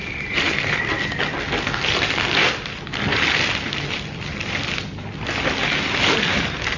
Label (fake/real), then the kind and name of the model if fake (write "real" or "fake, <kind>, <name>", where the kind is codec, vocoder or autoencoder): real